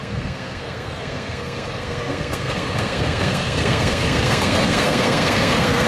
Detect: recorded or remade remade